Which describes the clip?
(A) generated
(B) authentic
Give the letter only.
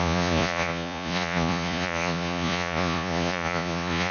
A